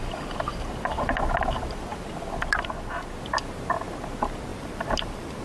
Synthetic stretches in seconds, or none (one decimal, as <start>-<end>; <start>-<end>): 4.5-5.4